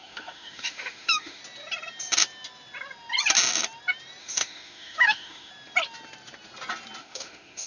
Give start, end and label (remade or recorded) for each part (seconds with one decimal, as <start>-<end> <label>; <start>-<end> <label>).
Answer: 0.0-1.4 remade; 1.4-4.2 recorded; 4.2-5.5 remade; 5.5-7.0 recorded; 7.0-7.7 remade